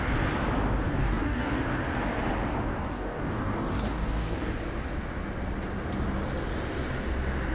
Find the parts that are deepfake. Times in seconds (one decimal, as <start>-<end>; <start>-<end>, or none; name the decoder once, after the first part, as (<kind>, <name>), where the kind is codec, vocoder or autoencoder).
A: 1.0-1.6 (codec, DAC); 2.7-4.5